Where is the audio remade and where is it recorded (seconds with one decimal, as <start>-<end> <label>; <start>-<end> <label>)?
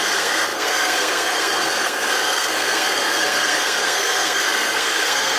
0.0-5.4 remade